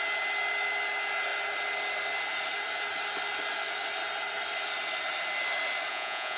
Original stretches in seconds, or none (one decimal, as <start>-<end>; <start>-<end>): 0.0-5.9